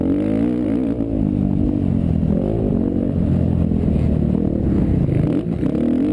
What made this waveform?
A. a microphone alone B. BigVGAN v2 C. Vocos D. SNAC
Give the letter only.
A